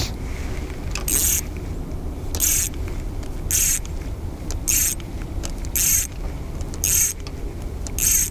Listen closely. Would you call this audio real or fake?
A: real